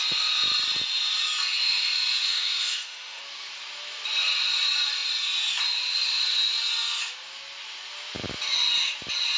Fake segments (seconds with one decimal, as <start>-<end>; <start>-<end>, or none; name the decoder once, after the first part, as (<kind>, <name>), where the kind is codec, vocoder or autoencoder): 2.2-3.2 (autoencoder, DAC-VAE)